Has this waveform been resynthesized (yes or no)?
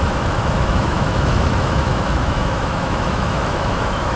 yes